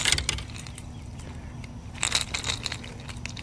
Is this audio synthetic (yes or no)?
no